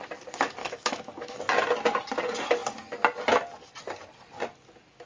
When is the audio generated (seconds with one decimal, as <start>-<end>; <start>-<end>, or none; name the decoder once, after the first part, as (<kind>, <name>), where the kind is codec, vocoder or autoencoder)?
0.6-1.4 (autoencoder, DAC-VAE)

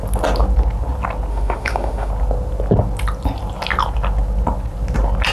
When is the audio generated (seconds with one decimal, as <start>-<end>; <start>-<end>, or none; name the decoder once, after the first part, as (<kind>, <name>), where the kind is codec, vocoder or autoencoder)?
1.3-2.1 (autoencoder, DAC-VAE)

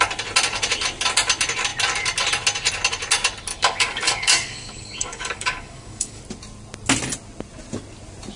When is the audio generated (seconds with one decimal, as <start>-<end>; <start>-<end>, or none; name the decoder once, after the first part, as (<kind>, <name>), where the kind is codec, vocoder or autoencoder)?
3.5-6.2 (codec, DAC)

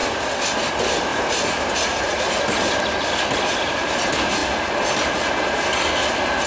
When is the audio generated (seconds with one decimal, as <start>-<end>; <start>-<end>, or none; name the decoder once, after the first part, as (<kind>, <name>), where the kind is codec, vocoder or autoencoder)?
1.1-2.2 (vocoder, BigVGAN v2)

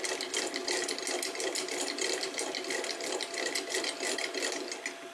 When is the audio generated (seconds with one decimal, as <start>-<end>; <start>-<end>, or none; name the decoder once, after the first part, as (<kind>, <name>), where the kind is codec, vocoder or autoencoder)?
none

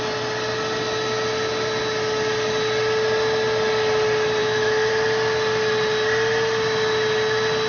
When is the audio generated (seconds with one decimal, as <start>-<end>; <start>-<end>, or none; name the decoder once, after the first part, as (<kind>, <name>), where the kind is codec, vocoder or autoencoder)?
4.4-4.9 (autoencoder, DAC-VAE)

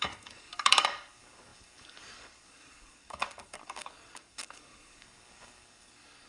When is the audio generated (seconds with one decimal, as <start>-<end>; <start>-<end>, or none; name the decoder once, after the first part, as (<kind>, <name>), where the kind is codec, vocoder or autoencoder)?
0.0-6.3 (codec, DAC)